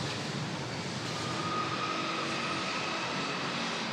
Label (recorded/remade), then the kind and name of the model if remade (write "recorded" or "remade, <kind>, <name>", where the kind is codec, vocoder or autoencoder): recorded